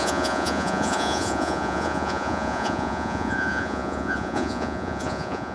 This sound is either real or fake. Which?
fake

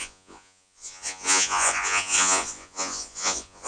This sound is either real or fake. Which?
fake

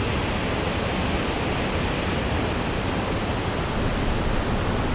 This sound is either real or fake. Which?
real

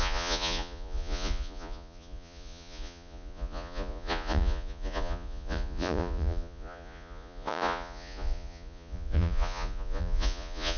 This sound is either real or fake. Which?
fake